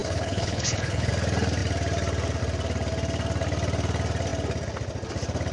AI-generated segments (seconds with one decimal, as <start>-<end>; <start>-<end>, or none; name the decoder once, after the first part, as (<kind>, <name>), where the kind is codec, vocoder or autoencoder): 0.0-1.1 (codec, HILCodec)